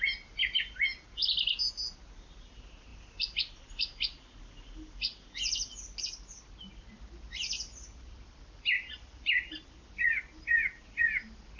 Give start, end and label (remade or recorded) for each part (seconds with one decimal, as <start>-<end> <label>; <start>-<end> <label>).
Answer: 0.0-11.6 recorded